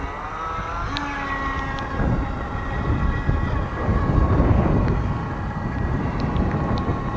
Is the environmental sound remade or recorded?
recorded